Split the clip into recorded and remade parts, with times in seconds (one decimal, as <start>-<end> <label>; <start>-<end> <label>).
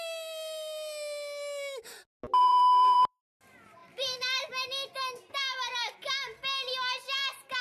0.0-2.4 recorded; 2.4-3.2 remade; 3.2-3.8 recorded; 3.8-4.5 remade; 4.5-7.6 recorded